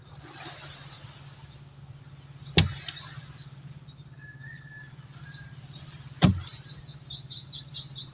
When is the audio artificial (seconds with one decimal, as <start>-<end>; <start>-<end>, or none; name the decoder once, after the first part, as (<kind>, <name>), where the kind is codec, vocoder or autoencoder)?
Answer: none

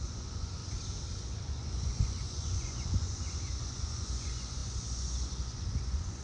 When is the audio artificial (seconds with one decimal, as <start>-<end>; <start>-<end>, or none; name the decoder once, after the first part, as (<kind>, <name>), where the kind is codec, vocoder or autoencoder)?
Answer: 0.0-0.6 (vocoder, Vocos); 1.2-6.2

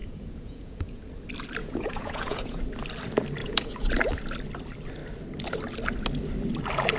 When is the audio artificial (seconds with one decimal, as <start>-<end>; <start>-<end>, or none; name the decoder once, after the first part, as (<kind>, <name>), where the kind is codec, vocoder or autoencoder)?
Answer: 0.0-1.0 (vocoder, Vocos); 1.6-2.6; 3.4-3.9

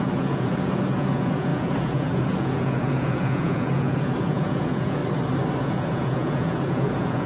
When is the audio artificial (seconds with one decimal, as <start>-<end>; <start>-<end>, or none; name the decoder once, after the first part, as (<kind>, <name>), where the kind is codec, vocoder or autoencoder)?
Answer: 0.0-5.0 (vocoder, Vocos); 5.6-7.3